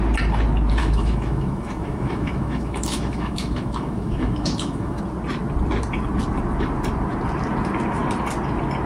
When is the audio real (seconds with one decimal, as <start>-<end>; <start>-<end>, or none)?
0.0-0.8; 5.0-8.9